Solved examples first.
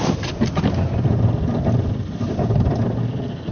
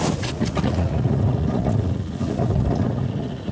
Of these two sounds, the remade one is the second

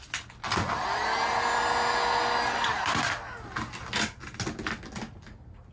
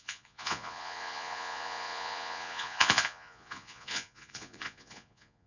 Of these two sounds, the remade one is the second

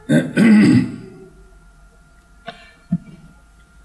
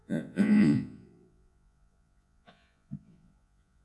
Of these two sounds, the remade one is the second